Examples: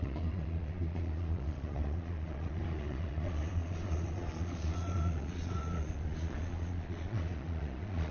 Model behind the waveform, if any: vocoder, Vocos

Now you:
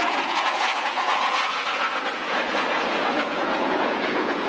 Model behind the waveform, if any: vocoder, Vocos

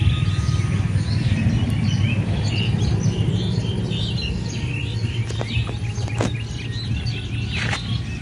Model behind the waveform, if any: none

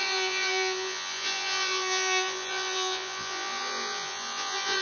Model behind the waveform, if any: vocoder, Vocos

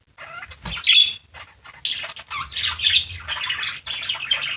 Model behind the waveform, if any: none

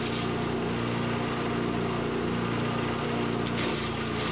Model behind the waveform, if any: none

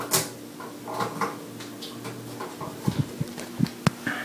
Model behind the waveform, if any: none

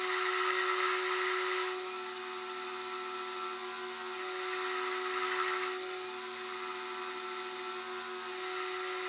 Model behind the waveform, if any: none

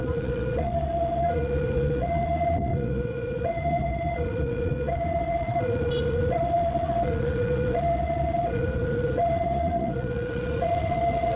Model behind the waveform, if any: vocoder, Vocos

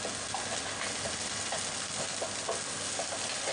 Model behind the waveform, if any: none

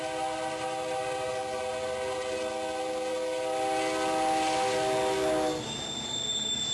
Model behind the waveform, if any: none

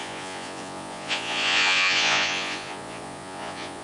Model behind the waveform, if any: vocoder, Vocos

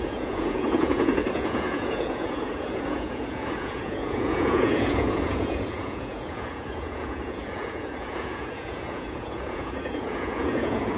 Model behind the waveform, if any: vocoder, Vocos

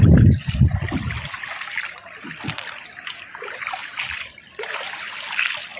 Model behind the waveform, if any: none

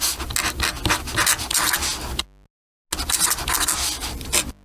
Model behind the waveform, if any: none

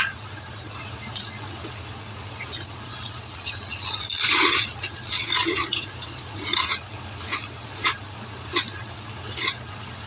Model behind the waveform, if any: vocoder, Vocos